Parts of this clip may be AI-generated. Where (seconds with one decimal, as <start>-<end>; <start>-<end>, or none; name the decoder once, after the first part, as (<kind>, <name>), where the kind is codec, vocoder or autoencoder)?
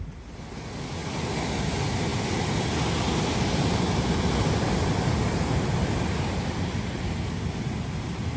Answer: none